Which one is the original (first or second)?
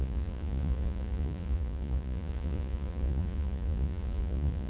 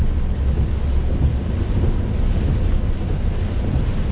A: second